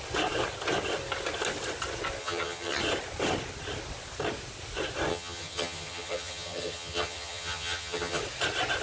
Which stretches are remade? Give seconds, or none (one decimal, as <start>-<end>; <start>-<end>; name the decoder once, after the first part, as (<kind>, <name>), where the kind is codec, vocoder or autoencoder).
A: 2.2-2.8 (vocoder, HiFi-GAN); 5.1-8.2